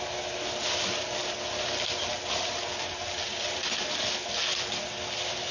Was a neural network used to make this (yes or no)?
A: no